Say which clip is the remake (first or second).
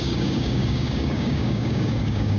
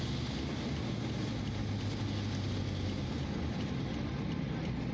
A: first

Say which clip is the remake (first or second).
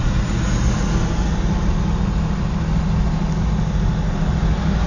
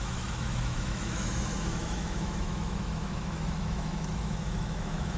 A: second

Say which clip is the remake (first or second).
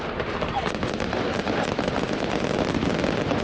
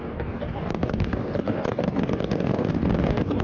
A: second